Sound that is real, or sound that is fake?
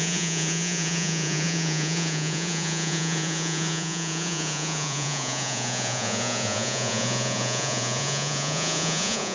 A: fake